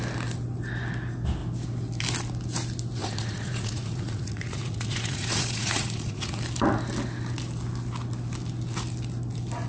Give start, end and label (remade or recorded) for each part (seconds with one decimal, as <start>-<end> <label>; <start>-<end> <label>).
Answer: 0.0-3.0 recorded; 3.0-6.4 remade; 6.4-9.7 recorded